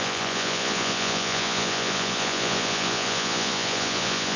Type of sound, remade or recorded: remade